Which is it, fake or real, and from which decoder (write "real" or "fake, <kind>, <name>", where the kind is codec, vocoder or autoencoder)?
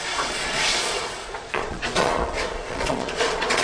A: fake, vocoder, Vocos